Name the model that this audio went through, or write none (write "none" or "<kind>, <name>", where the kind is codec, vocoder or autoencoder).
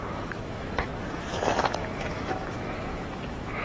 autoencoder, DAC-VAE